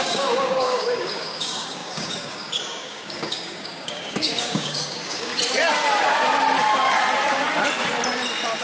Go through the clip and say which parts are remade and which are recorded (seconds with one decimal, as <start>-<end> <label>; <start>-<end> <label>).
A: 0.0-5.3 remade; 5.3-8.6 recorded